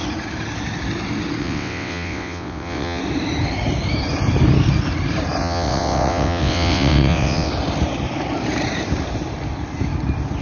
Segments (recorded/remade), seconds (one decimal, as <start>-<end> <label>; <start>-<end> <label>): 0.0-1.4 recorded; 1.4-3.0 remade; 3.0-5.4 recorded; 5.4-7.5 remade; 7.5-10.4 recorded